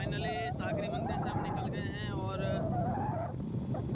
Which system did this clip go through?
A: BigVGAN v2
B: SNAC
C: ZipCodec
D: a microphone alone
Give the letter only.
D